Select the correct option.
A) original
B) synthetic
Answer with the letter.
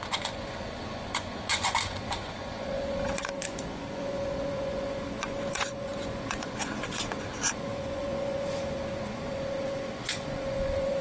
B